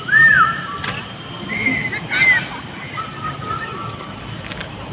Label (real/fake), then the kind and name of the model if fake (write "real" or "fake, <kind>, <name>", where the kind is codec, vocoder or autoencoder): real